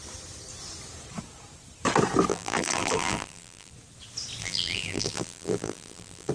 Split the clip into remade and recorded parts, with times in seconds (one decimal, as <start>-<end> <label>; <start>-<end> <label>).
0.0-2.3 recorded; 2.3-3.7 remade; 3.7-4.4 recorded; 4.4-6.3 remade